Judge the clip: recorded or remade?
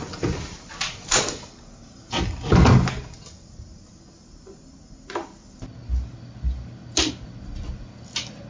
recorded